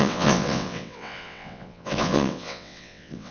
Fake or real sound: fake